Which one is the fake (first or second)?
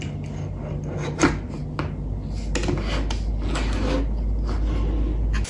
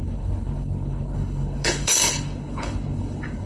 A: second